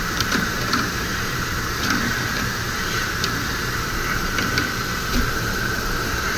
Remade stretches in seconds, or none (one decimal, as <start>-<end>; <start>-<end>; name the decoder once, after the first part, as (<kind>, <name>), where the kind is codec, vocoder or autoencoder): 0.0-6.4 (vocoder, BigVGAN v2)